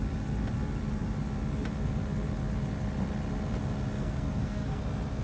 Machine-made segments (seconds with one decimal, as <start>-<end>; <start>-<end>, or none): 4.0-4.8